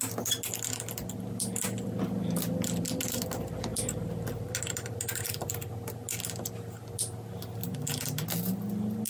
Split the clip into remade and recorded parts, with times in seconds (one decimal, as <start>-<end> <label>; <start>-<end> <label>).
0.0-9.1 recorded